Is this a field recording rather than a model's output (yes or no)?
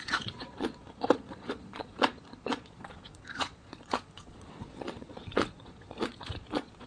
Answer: no